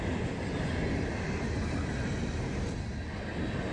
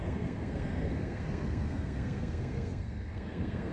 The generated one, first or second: second